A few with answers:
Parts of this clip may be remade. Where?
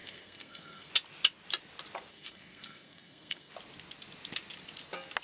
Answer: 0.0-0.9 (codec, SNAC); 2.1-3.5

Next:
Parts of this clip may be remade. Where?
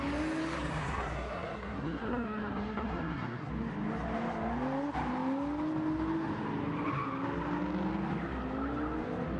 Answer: 0.7-3.5 (codec, SNAC)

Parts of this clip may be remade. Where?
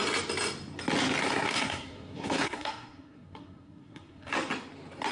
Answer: 1.2-4.3 (codec, SNAC)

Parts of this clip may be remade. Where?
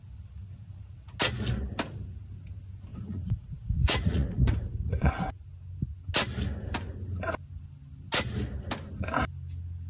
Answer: 2.9-5.4 (vocoder, Vocos)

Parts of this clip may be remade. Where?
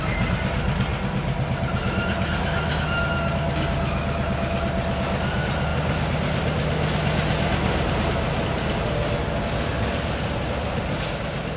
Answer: none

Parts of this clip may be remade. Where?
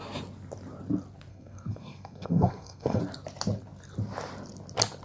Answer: 1.3-3.0 (codec, SNAC)